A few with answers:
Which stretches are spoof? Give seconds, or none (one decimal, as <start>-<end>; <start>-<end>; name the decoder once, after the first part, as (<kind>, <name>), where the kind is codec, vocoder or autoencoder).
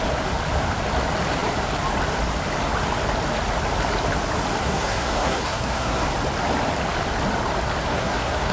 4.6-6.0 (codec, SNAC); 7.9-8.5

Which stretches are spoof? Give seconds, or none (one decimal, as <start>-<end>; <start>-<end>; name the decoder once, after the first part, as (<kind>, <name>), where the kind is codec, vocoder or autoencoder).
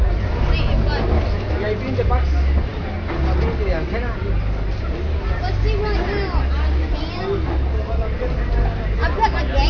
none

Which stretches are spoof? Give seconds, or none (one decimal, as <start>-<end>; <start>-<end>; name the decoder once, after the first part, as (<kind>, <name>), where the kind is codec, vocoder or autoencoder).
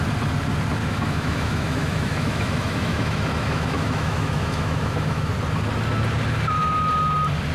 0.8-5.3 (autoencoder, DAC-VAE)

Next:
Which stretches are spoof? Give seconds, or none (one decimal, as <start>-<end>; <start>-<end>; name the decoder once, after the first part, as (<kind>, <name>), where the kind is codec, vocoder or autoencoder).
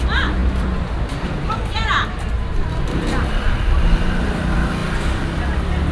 0.0-4.8 (vocoder, BigVGAN v2); 5.4-5.9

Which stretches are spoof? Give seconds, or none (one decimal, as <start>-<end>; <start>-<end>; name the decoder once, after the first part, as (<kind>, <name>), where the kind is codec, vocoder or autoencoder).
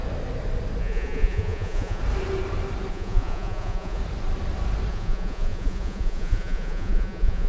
0.8-2.0 (vocoder, Vocos); 2.9-4.0; 4.9-7.5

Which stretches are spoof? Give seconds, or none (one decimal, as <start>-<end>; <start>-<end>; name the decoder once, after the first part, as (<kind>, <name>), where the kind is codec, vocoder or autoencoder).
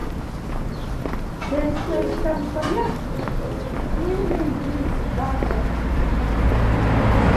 4.2-6.6 (vocoder, BigVGAN v2)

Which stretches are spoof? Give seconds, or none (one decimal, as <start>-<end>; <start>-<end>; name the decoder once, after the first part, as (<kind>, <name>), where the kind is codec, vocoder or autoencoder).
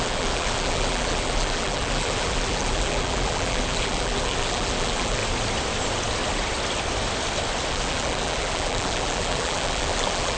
0.0-5.2 (vocoder, BigVGAN v2); 7.7-10.4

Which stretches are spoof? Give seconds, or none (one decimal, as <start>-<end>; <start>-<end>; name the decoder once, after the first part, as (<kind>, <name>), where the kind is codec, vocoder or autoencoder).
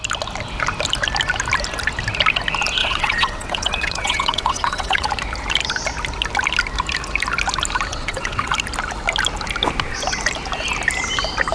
2.8-5.1 (vocoder, WaveNeXt); 7.9-8.5